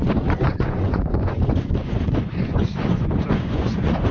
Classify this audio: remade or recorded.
remade